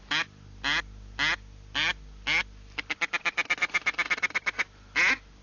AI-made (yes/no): no